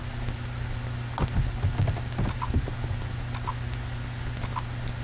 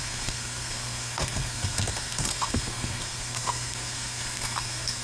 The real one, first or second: first